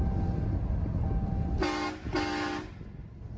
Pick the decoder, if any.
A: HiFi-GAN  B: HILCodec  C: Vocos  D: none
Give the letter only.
D